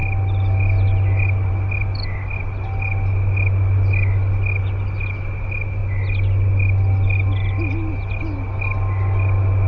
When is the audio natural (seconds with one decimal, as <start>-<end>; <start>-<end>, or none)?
0.0-9.7

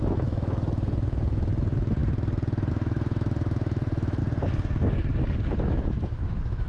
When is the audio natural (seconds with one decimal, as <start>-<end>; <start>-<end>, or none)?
2.0-2.7; 4.2-5.9